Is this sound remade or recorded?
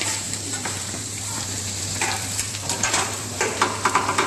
remade